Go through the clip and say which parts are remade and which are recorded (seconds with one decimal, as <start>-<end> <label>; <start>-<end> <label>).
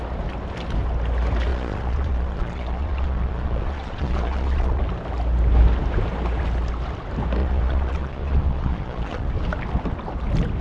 0.0-1.5 recorded; 1.5-4.8 remade; 4.8-7.4 recorded; 7.4-9.3 remade; 9.3-10.6 recorded